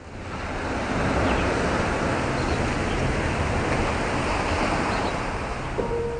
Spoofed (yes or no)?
no